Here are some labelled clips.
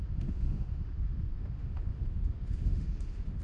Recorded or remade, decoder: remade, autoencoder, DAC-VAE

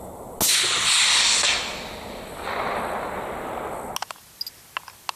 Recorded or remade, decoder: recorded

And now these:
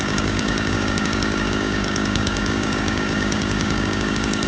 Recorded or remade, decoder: remade, codec, DAC